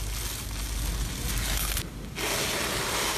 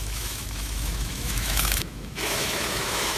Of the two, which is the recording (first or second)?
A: first